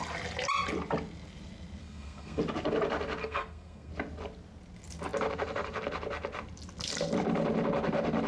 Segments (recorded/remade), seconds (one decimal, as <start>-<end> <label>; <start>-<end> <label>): 0.0-1.8 recorded; 1.8-2.4 remade; 2.4-3.2 recorded; 3.2-3.9 remade; 3.9-8.3 recorded